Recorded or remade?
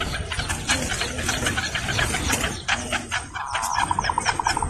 recorded